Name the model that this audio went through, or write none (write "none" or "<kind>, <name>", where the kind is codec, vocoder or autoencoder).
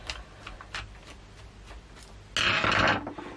none